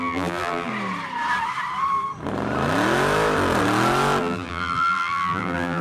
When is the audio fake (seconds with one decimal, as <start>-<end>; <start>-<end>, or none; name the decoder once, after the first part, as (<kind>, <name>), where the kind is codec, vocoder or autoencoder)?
0.0-0.7 (vocoder, BigVGAN v2); 4.2-5.8